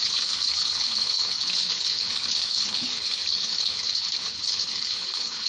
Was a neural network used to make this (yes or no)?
yes